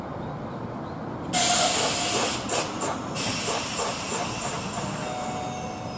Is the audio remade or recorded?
recorded